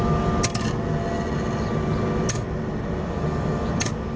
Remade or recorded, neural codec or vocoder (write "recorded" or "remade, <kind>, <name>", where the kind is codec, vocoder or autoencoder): recorded